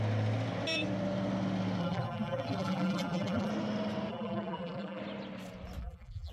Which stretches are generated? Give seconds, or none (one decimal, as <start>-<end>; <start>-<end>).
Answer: 1.8-3.5; 4.1-5.0; 5.8-6.3